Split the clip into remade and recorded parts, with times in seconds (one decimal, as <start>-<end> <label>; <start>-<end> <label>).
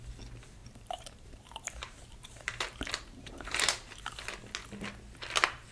0.0-0.6 recorded; 0.6-4.0 remade; 4.0-5.7 recorded